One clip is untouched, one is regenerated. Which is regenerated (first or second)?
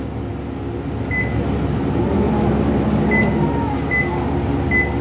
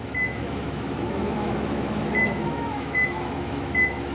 second